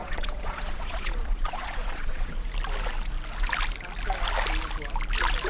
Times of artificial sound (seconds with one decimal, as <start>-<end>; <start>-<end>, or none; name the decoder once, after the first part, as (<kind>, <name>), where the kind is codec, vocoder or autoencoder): 0.0-2.3 (vocoder, Vocos)

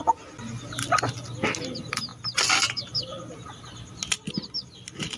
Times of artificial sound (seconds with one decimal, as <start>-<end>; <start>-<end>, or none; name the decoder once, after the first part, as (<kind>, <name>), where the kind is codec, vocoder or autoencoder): none

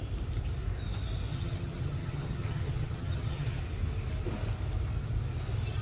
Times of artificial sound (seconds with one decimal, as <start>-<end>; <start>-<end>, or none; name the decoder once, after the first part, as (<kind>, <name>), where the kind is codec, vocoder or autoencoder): 1.3-3.6 (vocoder, HiFi-GAN)

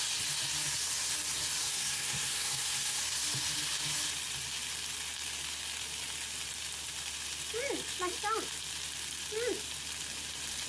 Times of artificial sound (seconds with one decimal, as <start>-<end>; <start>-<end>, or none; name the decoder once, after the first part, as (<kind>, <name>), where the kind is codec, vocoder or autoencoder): 1.6-3.0 (codec, SNAC)

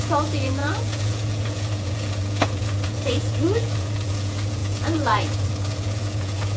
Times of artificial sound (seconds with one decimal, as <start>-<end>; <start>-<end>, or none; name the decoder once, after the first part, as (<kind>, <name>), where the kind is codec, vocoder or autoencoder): 0.0-6.6 (vocoder, Vocos)

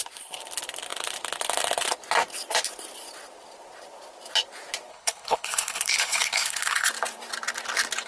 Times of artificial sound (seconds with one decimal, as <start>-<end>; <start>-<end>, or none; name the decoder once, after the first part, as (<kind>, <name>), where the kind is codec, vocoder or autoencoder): 4.9-6.9 (codec, HILCodec)